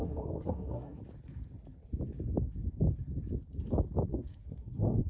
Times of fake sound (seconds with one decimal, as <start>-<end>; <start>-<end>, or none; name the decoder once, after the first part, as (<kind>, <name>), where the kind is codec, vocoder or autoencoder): 0.0-1.0 (codec, SNAC); 4.1-5.1